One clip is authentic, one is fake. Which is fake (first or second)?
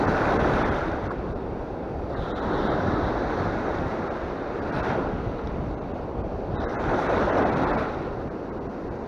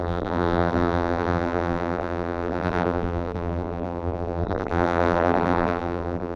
second